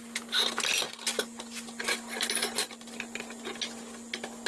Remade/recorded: recorded